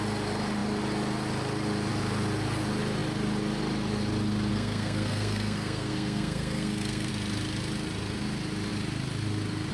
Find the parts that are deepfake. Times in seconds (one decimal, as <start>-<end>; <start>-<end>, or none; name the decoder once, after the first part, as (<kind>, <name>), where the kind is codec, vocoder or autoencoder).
4.5-7.1 (codec, SNAC)